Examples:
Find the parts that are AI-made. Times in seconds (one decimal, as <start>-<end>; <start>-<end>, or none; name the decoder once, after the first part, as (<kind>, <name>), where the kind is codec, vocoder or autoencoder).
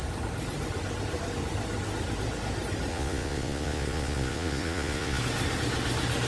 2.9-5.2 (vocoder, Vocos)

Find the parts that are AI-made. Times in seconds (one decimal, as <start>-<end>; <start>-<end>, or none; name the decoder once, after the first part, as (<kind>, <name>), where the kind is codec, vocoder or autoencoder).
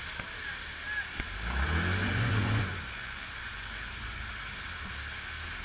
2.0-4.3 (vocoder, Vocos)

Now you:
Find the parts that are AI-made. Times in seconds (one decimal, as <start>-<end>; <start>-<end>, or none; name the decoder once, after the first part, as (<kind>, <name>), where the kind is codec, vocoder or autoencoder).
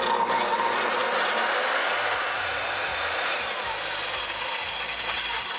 none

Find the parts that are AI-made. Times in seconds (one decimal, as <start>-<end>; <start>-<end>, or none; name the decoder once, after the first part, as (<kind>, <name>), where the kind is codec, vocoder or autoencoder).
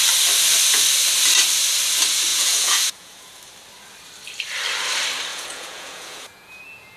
2.3-3.4 (vocoder, Vocos); 5.3-6.6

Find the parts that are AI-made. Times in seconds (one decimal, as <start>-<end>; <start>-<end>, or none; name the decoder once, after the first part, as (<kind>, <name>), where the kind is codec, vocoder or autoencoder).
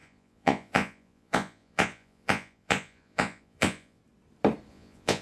0.0-4.0 (vocoder, Vocos); 4.7-5.2